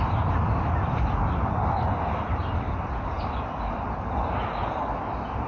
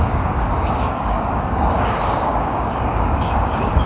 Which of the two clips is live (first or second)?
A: first